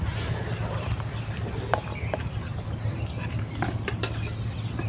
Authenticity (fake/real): real